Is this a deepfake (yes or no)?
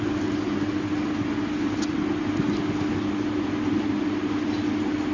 no